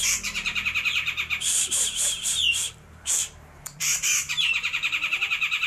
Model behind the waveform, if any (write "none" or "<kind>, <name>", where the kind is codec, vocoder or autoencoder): vocoder, BigVGAN v2